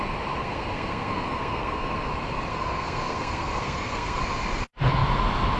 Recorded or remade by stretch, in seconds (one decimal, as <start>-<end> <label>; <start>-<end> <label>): 0.0-0.4 recorded; 0.4-2.1 remade; 2.1-2.5 recorded; 2.5-4.2 remade; 4.2-5.6 recorded